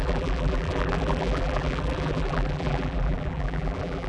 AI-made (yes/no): yes